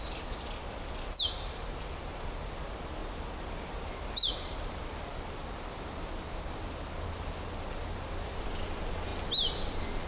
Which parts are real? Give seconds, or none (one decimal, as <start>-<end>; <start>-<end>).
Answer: 0.0-10.1